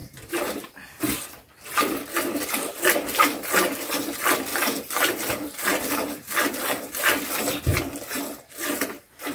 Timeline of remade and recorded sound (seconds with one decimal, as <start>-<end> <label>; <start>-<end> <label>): 0.0-7.7 remade; 7.7-8.6 recorded; 8.6-9.3 remade